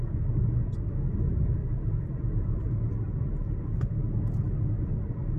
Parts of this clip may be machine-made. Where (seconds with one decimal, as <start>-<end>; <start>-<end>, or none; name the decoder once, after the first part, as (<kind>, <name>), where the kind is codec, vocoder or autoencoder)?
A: 1.6-2.9 (vocoder, BigVGAN v2)